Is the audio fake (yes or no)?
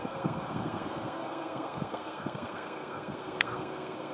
yes